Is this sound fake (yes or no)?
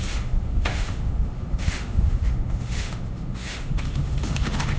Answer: yes